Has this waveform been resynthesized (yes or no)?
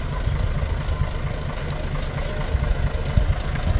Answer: no